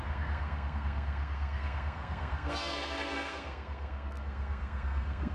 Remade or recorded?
remade